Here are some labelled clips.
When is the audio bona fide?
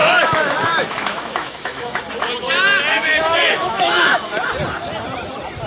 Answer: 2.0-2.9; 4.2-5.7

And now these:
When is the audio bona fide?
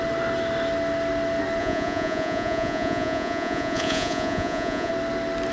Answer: 0.0-1.6; 4.9-5.5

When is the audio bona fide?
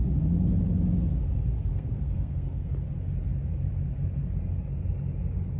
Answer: 0.0-1.7; 2.7-5.6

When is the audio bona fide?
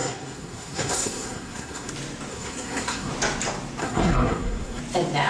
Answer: 1.9-2.3; 3.1-3.8; 4.8-5.3